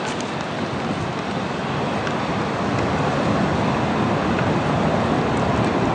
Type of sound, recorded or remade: recorded